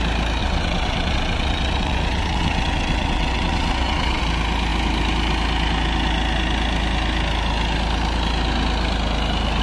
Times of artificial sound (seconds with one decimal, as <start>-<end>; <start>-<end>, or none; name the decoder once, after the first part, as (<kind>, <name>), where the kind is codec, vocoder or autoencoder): 0.4-4.2 (vocoder, WaveNeXt)